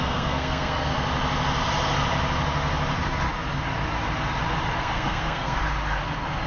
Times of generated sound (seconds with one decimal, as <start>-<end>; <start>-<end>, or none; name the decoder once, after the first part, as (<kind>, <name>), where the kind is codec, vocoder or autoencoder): 0.0-0.9 (codec, SNAC); 4.8-5.6